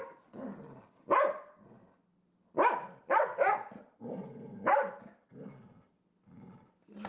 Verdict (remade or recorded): recorded